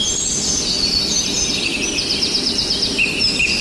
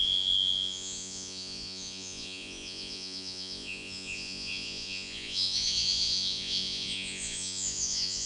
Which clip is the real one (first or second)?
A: first